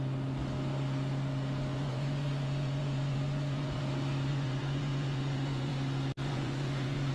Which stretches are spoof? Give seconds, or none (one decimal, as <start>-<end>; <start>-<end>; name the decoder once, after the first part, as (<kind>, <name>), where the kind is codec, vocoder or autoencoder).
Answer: 1.7-3.8 (vocoder, Vocos); 4.3-5.7; 6.2-7.1